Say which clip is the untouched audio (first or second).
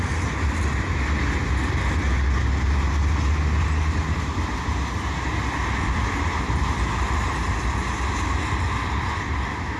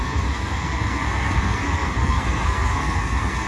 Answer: first